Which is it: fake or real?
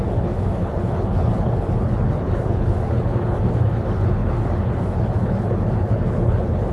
fake